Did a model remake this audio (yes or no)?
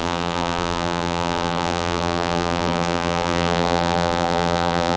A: yes